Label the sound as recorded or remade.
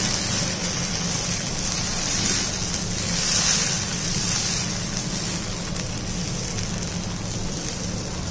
recorded